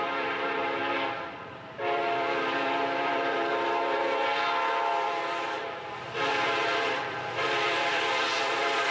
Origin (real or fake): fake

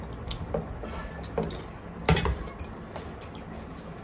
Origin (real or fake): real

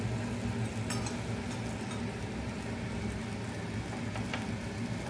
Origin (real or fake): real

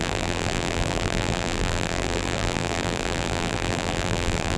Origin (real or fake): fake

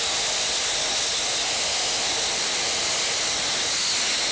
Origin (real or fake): real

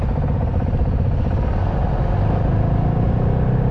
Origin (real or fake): real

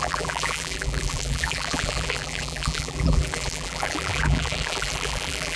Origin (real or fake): fake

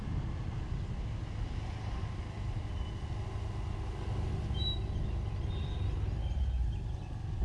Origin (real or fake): real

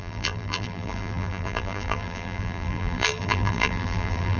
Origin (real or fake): fake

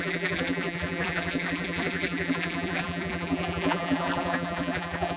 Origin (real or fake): fake